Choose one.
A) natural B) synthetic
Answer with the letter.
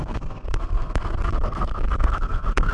B